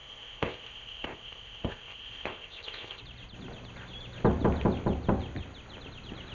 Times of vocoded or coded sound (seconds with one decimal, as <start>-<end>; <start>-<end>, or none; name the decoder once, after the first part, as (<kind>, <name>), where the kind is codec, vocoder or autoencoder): 0.0-3.0 (codec, ZipCodec)